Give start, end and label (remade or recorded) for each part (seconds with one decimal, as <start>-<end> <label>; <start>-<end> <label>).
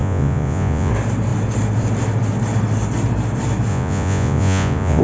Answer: 0.0-0.9 remade; 0.9-3.7 recorded; 3.7-5.0 remade